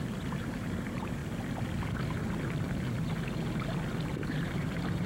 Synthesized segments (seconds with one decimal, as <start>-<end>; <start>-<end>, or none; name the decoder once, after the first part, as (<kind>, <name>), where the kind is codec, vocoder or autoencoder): 0.0-1.2 (vocoder, BigVGAN v2); 4.3-5.1

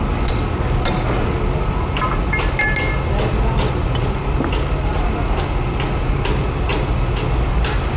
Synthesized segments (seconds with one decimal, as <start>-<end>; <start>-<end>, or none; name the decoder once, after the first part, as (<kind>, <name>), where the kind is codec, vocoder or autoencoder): none

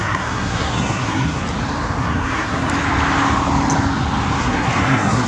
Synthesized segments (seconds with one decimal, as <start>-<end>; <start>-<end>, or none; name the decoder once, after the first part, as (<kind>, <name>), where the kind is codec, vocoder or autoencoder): 0.0-1.4 (codec, SNAC); 2.0-2.7; 4.4-5.3

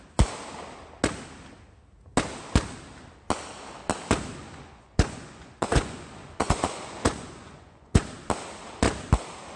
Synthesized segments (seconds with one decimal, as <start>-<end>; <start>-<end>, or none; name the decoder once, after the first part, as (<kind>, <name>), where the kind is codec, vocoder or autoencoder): 4.4-8.0 (vocoder, Vocos)

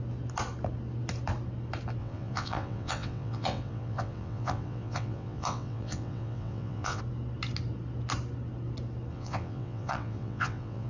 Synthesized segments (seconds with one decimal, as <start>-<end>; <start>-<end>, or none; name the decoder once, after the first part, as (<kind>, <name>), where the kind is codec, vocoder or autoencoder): 2.0-7.0 (vocoder, WaveNeXt); 9.1-10.9